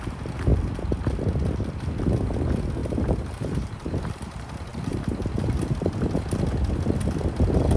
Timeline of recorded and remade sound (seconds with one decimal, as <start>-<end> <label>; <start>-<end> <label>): 0.0-2.8 recorded; 2.8-4.1 remade; 4.1-4.7 recorded; 4.7-5.3 remade; 5.3-7.8 recorded